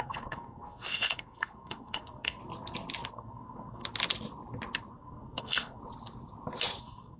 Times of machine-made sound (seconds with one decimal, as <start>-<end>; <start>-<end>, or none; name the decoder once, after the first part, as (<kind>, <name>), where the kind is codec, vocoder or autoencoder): 0.0-2.4 (codec, SNAC); 3.1-3.8; 4.9-5.8; 6.8-7.2